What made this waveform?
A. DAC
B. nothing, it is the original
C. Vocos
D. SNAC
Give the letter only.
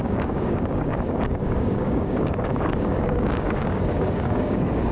A